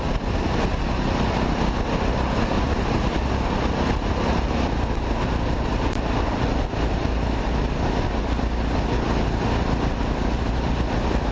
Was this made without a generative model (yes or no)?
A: yes